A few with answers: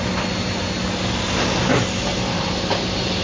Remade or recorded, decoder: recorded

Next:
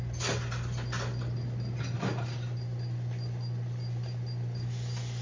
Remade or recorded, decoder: recorded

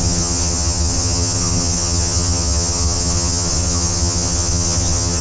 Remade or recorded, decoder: remade, vocoder, HiFi-GAN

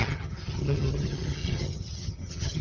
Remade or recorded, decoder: remade, vocoder, HiFi-GAN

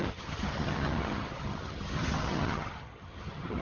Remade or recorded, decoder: remade, vocoder, HiFi-GAN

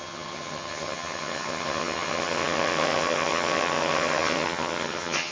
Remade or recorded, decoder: remade, vocoder, HiFi-GAN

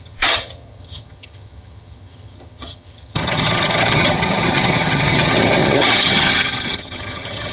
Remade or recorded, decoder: remade, vocoder, HiFi-GAN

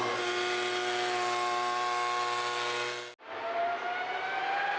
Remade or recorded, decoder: recorded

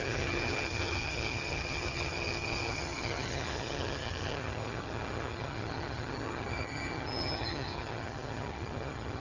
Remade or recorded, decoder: remade, vocoder, HiFi-GAN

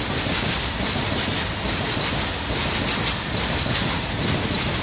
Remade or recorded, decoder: recorded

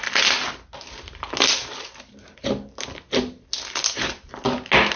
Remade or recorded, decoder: recorded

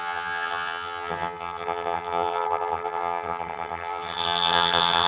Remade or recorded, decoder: remade, vocoder, HiFi-GAN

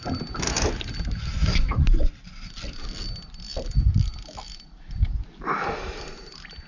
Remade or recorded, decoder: recorded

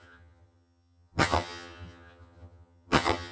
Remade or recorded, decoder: remade, vocoder, HiFi-GAN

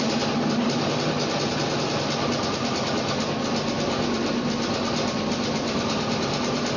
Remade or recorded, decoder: recorded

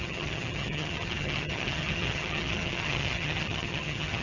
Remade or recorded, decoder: remade, vocoder, HiFi-GAN